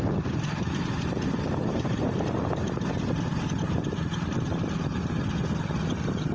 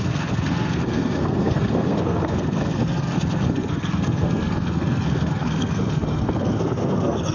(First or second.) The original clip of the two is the first